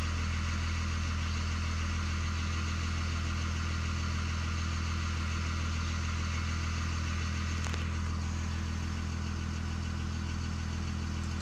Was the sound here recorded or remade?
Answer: recorded